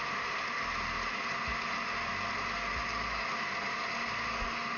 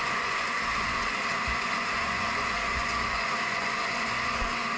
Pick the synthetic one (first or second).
second